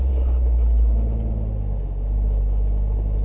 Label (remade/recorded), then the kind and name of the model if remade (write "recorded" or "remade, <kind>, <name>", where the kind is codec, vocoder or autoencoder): recorded